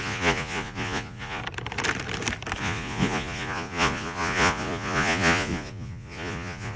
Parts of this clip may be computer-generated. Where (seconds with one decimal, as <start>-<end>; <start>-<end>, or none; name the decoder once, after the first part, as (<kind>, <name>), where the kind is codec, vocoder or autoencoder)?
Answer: 0.0-1.4 (vocoder, Vocos); 2.6-6.8